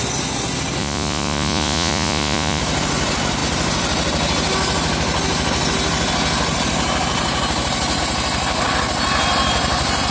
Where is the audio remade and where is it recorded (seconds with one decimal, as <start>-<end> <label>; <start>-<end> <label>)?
0.0-0.8 recorded; 0.8-2.6 remade; 2.6-10.1 recorded